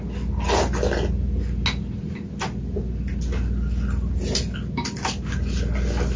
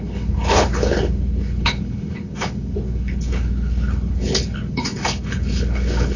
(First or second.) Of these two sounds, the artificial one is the second